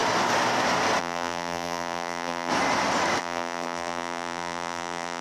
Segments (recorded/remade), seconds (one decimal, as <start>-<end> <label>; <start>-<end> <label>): 0.0-1.0 recorded; 1.0-2.5 remade; 2.5-3.2 recorded; 3.2-5.2 remade